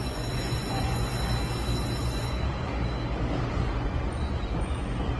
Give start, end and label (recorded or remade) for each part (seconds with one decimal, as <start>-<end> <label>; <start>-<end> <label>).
0.0-1.1 remade; 1.1-2.0 recorded; 2.0-2.7 remade; 2.7-3.5 recorded; 3.5-5.2 remade

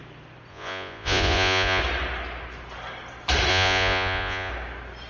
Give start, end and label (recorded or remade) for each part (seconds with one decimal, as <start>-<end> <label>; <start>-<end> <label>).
0.0-0.5 recorded; 0.5-1.8 remade; 1.8-3.5 recorded; 3.5-4.5 remade; 4.5-5.1 recorded

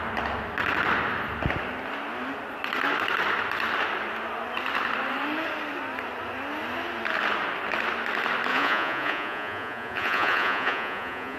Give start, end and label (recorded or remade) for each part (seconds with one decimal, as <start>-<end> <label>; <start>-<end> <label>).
0.0-8.5 recorded; 8.5-11.4 remade

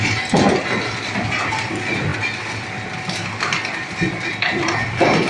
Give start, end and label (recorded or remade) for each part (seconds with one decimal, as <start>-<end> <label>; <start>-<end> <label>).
0.0-5.3 recorded

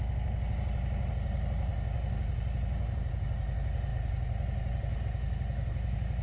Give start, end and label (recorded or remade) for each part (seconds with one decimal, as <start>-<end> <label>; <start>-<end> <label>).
0.0-6.2 recorded